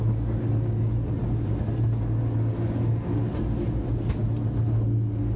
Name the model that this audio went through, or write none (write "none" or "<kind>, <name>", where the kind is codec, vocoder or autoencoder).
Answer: none